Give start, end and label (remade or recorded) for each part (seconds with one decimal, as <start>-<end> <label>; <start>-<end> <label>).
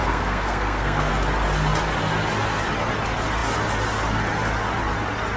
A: 0.0-1.1 remade; 1.1-5.4 recorded